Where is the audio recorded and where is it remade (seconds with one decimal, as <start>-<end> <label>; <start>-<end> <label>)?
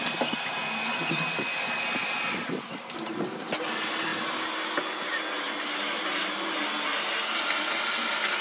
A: 0.0-8.4 recorded